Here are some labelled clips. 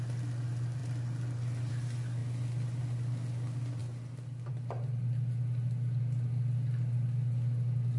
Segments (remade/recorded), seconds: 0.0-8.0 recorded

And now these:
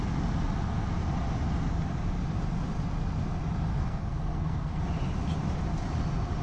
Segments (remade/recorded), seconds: 0.0-3.7 recorded; 3.7-4.8 remade; 4.8-6.4 recorded

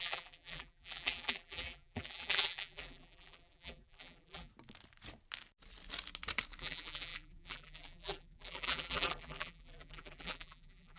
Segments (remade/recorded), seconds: 0.0-4.5 remade; 4.5-6.6 recorded; 6.6-11.0 remade

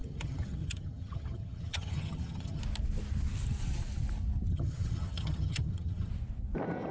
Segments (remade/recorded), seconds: 0.0-2.6 remade; 2.6-4.5 recorded; 4.5-6.1 remade; 6.1-6.9 recorded

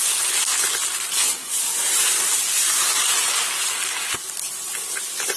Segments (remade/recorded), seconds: 0.0-5.4 recorded

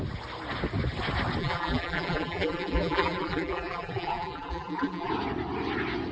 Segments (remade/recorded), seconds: 0.0-1.4 recorded; 1.4-5.1 remade; 5.1-6.1 recorded